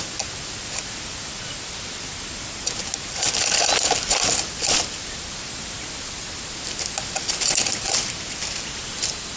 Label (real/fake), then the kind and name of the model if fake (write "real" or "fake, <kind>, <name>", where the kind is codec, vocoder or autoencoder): real